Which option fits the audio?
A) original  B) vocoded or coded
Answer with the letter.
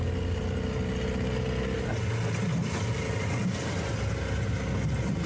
A